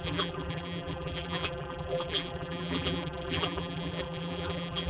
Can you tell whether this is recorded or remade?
remade